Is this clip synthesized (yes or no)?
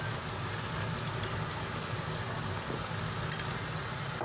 no